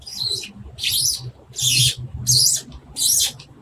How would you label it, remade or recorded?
recorded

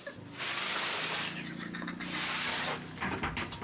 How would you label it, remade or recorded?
recorded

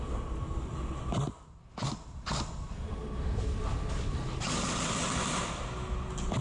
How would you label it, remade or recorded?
recorded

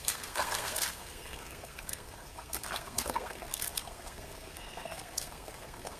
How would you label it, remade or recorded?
remade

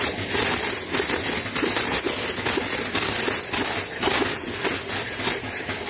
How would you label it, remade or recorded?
recorded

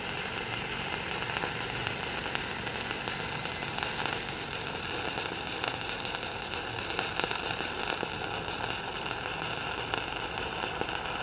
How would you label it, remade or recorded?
recorded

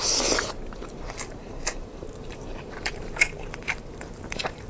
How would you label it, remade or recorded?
remade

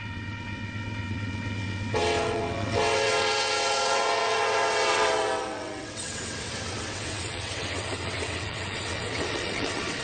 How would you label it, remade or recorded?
remade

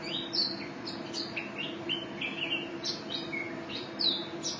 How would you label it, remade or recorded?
recorded